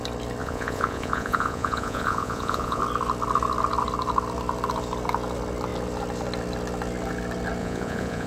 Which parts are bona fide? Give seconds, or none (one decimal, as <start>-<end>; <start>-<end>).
0.0-0.4; 2.8-7.6